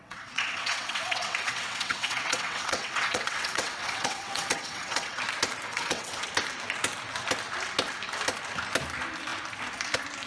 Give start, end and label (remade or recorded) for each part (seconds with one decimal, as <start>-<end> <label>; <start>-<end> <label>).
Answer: 0.0-5.2 remade; 5.2-5.7 recorded; 5.7-6.2 remade; 6.2-10.3 recorded